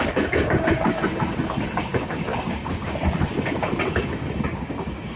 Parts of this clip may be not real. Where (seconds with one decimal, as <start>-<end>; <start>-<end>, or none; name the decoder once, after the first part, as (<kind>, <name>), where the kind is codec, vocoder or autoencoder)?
0.0-1.0 (codec, DAC); 2.1-2.6; 4.3-5.2